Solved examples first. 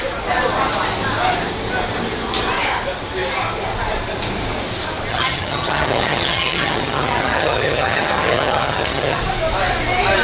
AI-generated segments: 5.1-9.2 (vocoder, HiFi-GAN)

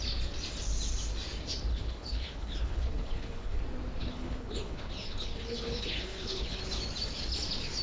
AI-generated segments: 1.7-3.6 (codec, HILCodec); 4.0-6.6

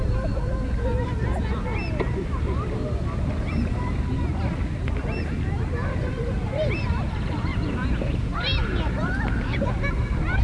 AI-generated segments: 0.0-0.9 (vocoder, BigVGAN v2); 2.1-2.8; 3.4-4.1; 5.9-7.5; 8.0-10.4

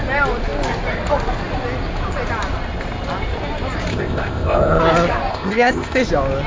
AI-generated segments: 3.9-4.8 (codec, ZipCodec); 5.3-6.1